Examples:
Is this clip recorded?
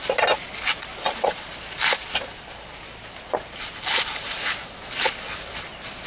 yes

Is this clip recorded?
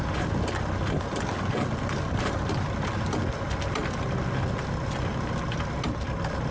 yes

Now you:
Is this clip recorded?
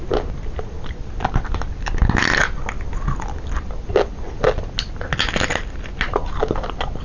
yes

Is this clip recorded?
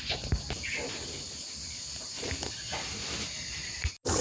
yes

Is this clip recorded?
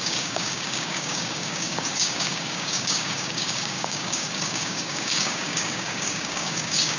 no